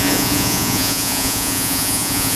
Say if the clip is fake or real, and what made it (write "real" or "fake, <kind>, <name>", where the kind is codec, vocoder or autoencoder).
fake, vocoder, Vocos